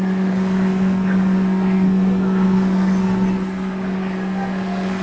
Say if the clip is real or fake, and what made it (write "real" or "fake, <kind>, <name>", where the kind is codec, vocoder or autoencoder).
fake, codec, SNAC